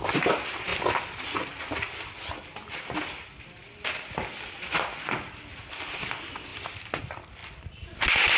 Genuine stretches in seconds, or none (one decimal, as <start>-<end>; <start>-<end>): 0.0-6.5; 7.0-8.4